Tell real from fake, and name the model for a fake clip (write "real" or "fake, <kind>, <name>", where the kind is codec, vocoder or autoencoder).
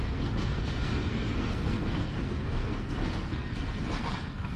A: fake, codec, SNAC